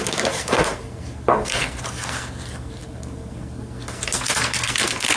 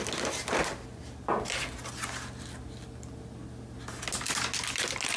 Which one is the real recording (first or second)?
second